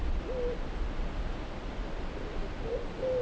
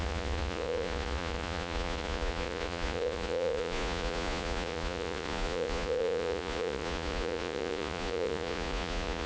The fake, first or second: second